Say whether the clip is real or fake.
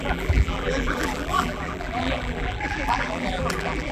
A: fake